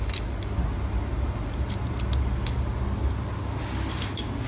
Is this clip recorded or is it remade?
recorded